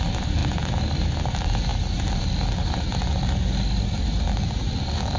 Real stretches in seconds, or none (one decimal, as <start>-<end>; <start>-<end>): 0.0-5.2